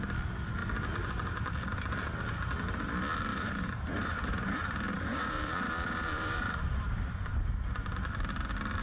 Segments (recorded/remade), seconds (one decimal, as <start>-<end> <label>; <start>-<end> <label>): 0.0-3.3 recorded; 3.3-7.5 remade; 7.5-8.8 recorded